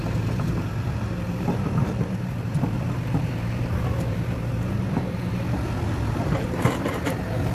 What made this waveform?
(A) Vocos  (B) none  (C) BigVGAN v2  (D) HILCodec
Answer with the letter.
C